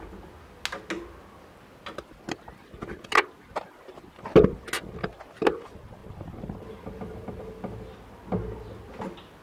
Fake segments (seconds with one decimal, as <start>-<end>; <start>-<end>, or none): 6.0-7.4